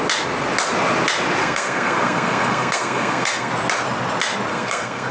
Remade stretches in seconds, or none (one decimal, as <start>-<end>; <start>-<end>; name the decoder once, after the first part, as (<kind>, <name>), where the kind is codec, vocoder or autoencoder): 1.4-3.5 (codec, SNAC); 4.5-5.1